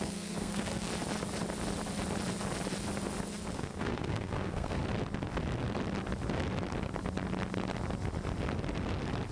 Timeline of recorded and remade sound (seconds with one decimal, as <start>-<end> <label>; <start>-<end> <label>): 0.0-0.9 remade; 0.9-3.5 recorded; 3.5-4.8 remade; 4.8-9.3 recorded